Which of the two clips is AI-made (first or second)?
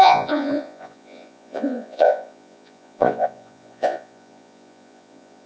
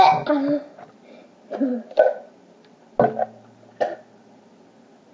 first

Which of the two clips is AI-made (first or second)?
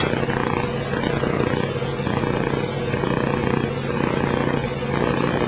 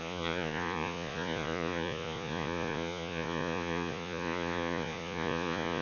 second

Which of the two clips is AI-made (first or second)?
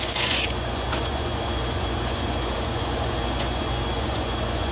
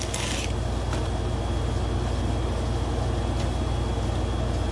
first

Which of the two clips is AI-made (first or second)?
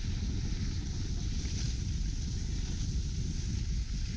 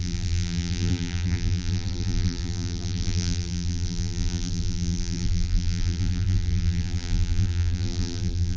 second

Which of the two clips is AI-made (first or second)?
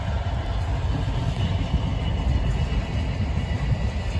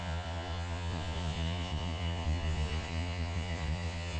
second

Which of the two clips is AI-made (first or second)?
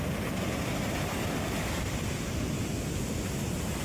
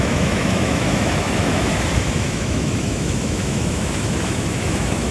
second